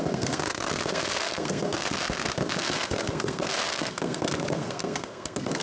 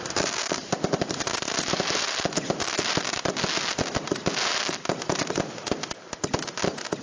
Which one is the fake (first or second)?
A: first